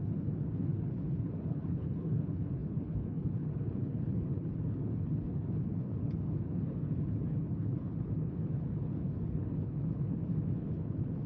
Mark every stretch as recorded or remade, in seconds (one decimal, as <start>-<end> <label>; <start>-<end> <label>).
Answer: 0.0-11.3 remade

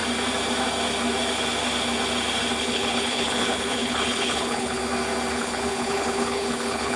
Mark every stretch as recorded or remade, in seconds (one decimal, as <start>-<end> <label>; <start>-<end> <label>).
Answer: 0.0-2.6 recorded; 2.6-4.8 remade; 4.8-5.3 recorded; 5.3-7.0 remade